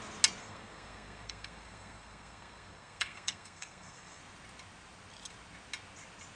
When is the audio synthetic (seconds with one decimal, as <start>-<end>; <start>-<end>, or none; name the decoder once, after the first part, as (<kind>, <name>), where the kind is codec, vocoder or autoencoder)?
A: 0.4-4.2 (codec, SNAC)